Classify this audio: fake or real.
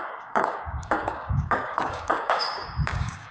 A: fake